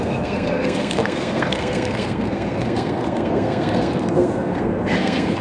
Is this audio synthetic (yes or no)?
yes